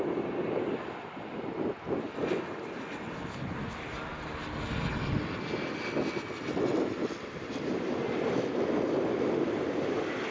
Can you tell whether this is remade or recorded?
recorded